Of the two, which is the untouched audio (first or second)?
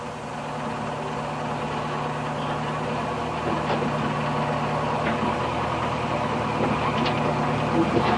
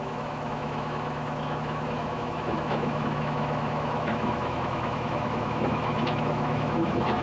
first